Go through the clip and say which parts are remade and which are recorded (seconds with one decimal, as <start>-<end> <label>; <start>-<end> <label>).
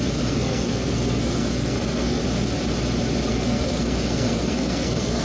0.0-2.2 remade; 2.2-3.3 recorded; 3.3-5.2 remade